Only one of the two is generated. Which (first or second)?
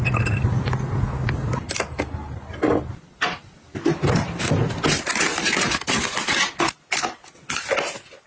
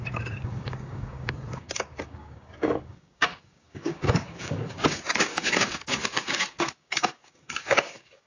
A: second